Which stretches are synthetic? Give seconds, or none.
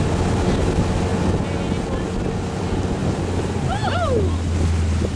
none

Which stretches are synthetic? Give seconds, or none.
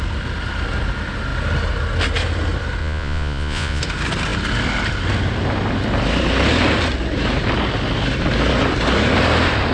2.8-3.8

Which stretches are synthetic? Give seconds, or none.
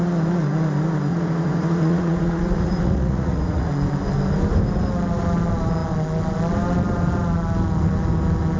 1.1-3.7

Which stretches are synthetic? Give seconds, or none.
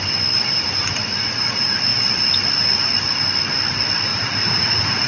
4.1-5.1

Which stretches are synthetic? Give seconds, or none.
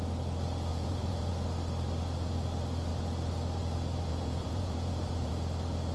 0.7-1.3; 4.1-5.3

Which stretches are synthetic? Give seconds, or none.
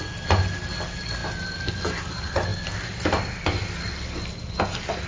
none